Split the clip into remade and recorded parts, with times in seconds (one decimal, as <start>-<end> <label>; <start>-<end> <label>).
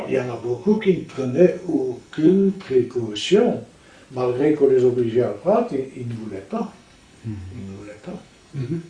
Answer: 0.0-3.0 remade; 3.0-6.5 recorded; 6.5-8.9 remade